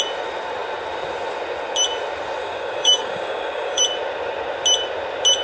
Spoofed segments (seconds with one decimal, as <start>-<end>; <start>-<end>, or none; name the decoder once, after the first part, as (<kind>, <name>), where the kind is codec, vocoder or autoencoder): 2.4-3.8 (codec, DAC)